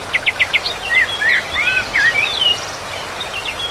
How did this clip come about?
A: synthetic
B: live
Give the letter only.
B